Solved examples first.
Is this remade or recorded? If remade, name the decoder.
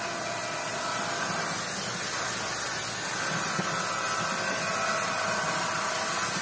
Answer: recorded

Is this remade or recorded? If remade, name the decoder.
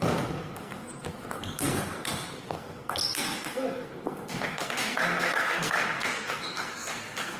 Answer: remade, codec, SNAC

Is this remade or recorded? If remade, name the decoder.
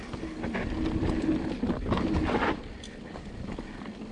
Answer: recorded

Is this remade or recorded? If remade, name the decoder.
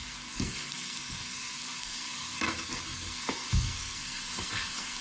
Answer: remade, codec, SNAC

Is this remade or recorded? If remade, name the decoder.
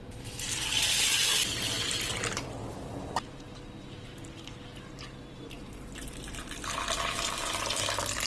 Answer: recorded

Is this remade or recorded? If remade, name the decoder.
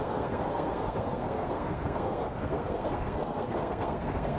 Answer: remade, codec, SNAC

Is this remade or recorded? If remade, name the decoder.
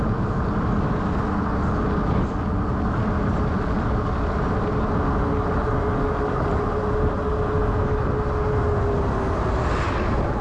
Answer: recorded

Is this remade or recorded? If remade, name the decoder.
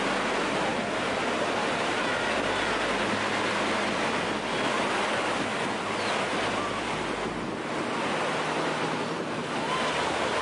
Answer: recorded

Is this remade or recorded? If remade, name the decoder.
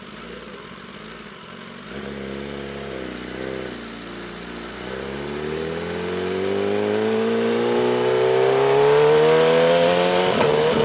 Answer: recorded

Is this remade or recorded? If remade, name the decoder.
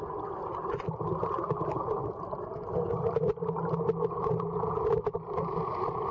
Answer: recorded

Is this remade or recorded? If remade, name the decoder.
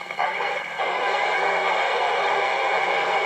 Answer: remade, codec, SNAC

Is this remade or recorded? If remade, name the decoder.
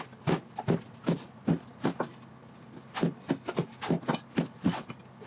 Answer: recorded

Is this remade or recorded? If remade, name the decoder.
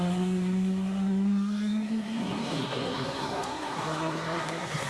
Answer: remade, codec, SNAC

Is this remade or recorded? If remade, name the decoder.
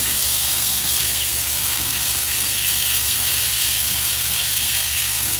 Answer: remade, codec, SNAC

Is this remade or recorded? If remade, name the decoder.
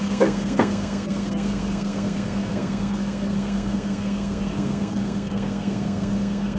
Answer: remade, codec, SNAC